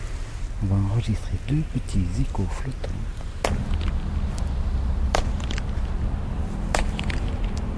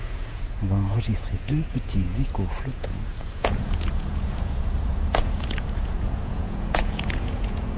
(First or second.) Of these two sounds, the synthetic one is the second